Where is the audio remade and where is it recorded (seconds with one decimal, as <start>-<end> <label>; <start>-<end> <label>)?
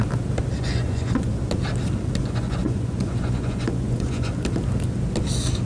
0.0-0.6 recorded; 0.6-1.3 remade; 1.3-2.2 recorded; 2.2-4.3 remade; 4.3-5.7 recorded